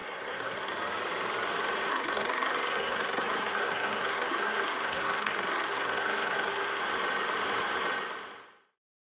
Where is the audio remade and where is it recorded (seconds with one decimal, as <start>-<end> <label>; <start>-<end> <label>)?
0.0-0.7 remade; 0.7-1.9 recorded; 1.9-6.8 remade; 6.8-9.2 recorded